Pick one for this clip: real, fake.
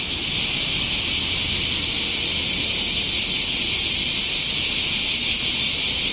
real